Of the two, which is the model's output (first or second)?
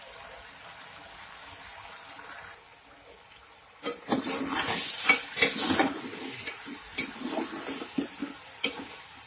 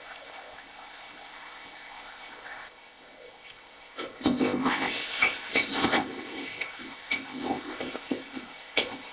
second